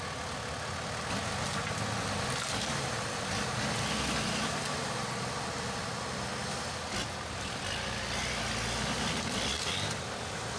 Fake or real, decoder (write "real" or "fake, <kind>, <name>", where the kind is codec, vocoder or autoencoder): real